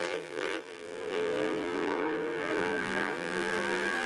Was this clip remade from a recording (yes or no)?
yes